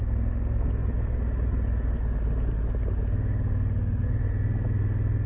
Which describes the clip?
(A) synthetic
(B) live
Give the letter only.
B